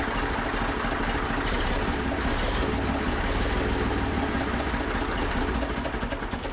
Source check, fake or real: real